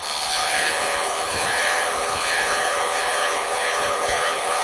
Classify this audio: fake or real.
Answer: fake